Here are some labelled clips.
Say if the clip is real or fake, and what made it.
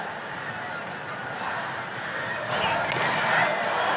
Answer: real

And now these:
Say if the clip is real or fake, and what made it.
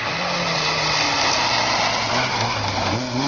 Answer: real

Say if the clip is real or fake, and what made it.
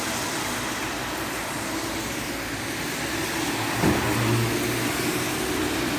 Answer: real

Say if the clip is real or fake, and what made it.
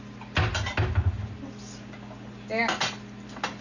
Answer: real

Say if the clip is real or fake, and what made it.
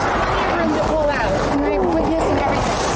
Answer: real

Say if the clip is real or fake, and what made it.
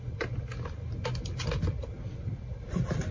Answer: real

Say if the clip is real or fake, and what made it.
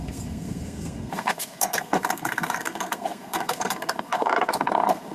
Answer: fake, codec, SNAC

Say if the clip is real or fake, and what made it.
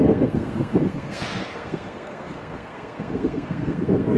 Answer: fake, codec, SNAC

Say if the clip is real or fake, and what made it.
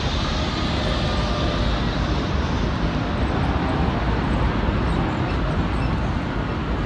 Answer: real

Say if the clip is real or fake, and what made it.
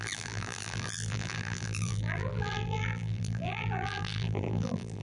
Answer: fake, vocoder, BigVGAN v2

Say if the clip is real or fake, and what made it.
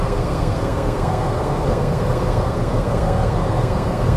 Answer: fake, codec, SNAC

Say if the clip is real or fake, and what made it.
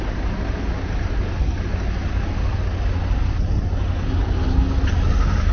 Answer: real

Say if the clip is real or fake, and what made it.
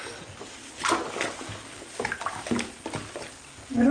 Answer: real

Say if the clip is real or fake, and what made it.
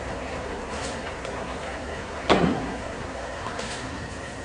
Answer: fake, codec, SNAC